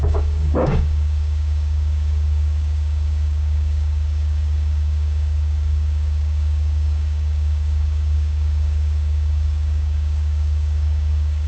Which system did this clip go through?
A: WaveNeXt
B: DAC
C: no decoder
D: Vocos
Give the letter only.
B